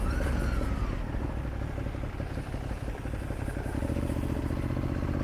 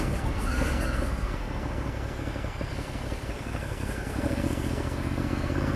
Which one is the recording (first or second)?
first